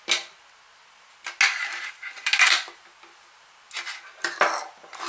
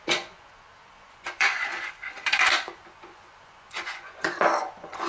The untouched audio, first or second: first